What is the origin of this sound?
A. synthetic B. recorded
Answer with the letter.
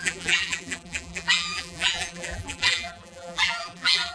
A